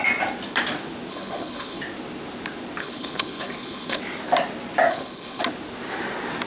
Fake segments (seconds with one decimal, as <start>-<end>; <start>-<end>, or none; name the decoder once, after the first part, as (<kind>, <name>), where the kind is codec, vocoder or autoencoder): 1.1-1.8 (codec, HILCodec); 2.8-4.0; 4.9-5.4